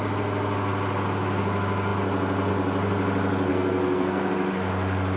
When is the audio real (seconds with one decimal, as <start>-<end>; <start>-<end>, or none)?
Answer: 0.0-3.5; 4.3-5.2